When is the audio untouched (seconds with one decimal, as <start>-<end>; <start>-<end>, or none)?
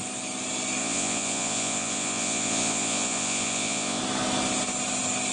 0.0-0.8; 4.0-5.3